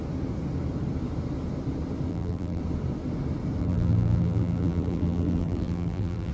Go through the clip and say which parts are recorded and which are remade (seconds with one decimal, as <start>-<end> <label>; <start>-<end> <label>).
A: 0.0-2.1 recorded; 2.1-2.6 remade; 2.6-3.6 recorded; 3.6-6.3 remade